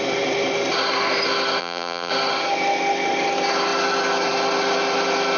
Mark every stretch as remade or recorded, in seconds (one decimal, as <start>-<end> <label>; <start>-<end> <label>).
0.0-1.6 recorded; 1.6-2.1 remade; 2.1-5.4 recorded